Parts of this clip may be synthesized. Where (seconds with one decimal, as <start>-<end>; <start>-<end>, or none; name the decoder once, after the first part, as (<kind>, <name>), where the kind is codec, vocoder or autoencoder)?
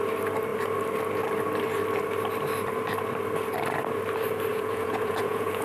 4.5-5.6 (vocoder, Vocos)